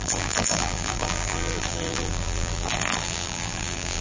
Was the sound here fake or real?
fake